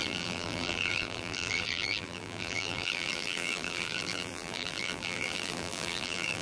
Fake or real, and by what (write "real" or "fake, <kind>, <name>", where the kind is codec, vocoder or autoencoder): fake, vocoder, BigVGAN v2